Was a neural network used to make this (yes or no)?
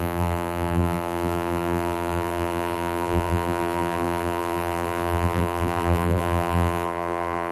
yes